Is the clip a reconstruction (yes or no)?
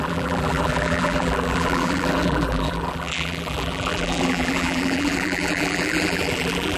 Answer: yes